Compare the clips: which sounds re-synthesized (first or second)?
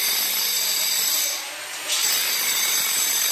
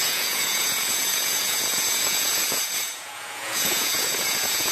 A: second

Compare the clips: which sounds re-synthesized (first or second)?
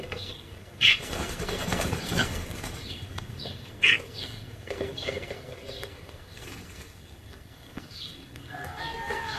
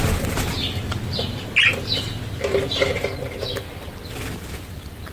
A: first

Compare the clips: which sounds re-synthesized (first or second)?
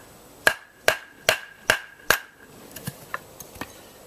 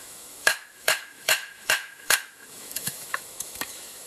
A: second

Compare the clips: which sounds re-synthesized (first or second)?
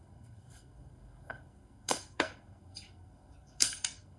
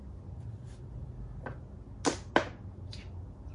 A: first